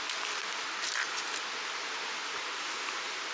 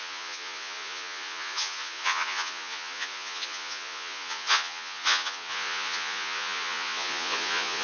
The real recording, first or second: first